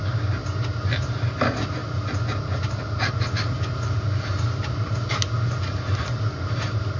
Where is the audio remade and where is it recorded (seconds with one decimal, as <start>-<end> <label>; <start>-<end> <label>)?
0.0-7.0 recorded